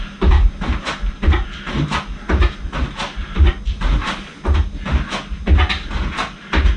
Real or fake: real